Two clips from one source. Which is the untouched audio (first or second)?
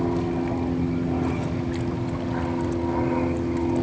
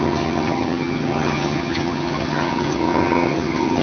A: first